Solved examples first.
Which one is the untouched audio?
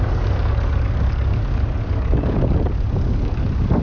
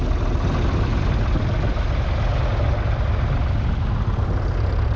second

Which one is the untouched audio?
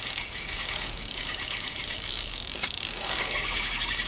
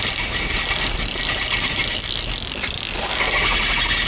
second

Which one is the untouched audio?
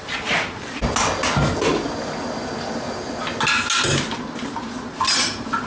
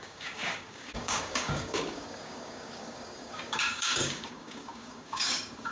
first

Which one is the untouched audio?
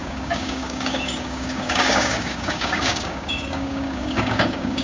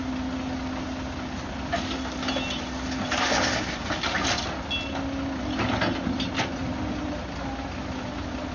second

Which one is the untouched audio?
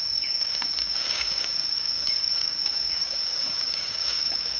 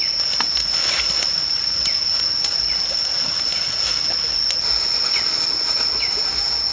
second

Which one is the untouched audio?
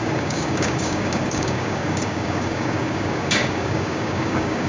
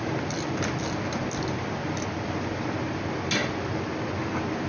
second